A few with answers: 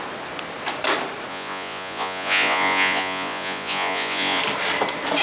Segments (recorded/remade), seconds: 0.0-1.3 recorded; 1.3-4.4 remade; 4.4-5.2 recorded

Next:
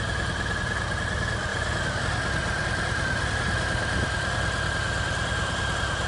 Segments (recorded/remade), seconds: 0.0-1.5 recorded; 1.5-2.0 remade; 2.0-2.4 recorded; 2.4-5.6 remade; 5.6-6.1 recorded

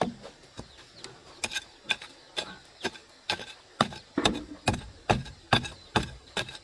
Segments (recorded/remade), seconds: 0.0-6.6 recorded

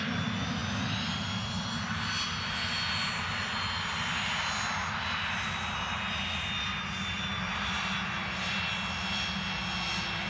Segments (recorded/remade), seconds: 0.0-10.3 recorded

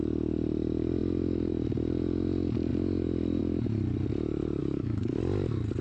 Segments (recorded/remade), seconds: 0.0-4.6 recorded; 4.6-5.2 remade; 5.2-5.8 recorded